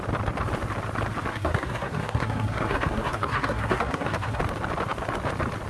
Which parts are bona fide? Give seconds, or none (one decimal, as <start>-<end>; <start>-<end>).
0.0-1.3; 4.4-5.7